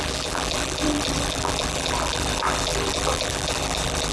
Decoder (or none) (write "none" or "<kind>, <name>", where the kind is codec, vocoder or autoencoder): vocoder, BigVGAN v2